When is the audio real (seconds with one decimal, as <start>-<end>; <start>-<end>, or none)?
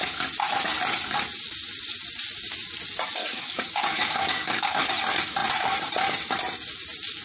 0.0-3.2; 4.9-7.2